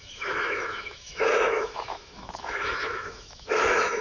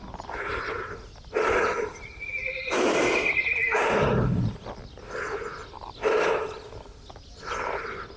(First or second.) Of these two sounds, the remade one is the first